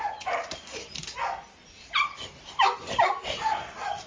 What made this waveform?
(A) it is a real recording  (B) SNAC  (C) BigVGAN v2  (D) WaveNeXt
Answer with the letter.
C